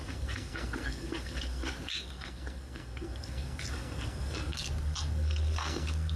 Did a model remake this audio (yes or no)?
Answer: yes